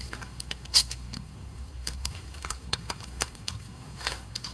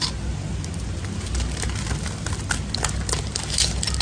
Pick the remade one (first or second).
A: first